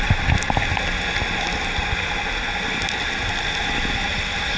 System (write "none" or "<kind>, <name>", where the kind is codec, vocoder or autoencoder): none